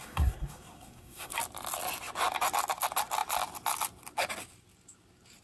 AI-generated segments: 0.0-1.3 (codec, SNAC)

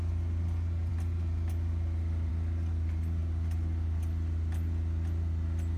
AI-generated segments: none

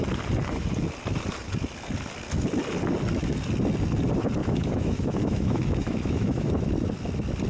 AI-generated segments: 4.4-6.5 (autoencoder, DAC-VAE)

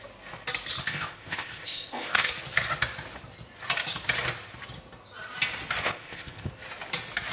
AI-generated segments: 0.8-2.3 (codec, ZipCodec); 5.8-6.5